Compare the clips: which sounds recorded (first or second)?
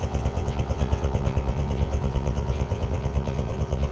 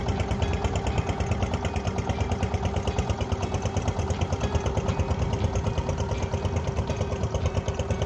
second